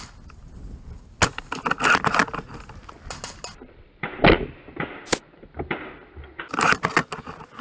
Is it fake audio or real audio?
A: real